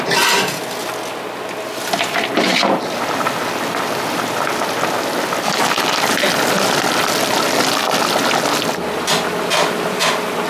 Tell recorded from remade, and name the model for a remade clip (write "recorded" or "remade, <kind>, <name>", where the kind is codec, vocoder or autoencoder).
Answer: recorded